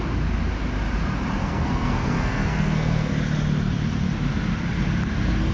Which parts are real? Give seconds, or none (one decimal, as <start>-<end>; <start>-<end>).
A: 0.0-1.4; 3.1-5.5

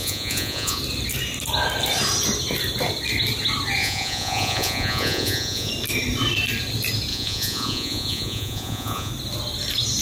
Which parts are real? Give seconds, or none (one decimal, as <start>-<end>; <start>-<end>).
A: 0.8-3.8; 5.7-7.1; 9.1-10.0

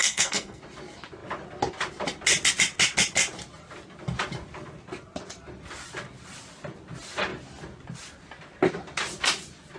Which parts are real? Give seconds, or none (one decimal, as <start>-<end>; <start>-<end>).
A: 0.6-9.8

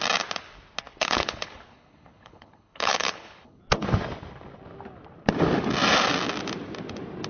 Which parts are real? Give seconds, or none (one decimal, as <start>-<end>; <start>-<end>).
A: 0.0-0.9; 3.6-7.3

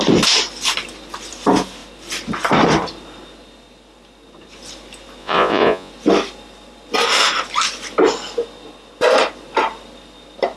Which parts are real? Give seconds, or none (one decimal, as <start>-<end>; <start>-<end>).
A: 0.0-5.2; 5.9-10.6